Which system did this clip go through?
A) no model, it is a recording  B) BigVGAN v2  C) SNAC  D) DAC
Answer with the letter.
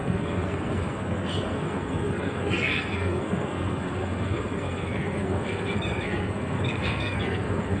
C